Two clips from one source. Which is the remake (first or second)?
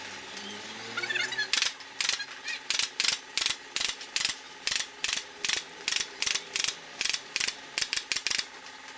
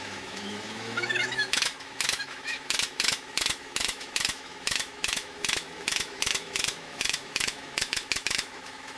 second